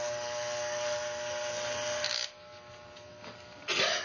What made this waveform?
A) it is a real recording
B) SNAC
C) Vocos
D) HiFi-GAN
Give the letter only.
A